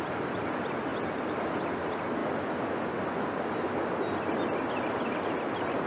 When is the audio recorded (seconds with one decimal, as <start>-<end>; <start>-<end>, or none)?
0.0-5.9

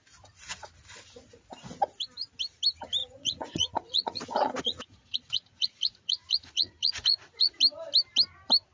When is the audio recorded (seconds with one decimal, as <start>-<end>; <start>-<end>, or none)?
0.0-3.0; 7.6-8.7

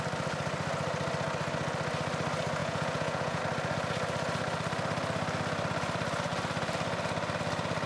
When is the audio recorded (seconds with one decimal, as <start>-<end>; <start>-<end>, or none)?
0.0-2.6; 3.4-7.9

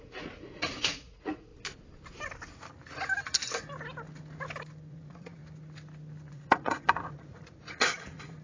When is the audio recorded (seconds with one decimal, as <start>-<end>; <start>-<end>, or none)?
1.5-4.9; 5.4-6.3

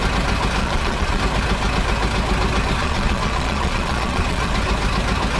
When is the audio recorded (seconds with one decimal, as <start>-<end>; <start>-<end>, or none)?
0.0-0.6; 1.2-2.8; 4.5-5.4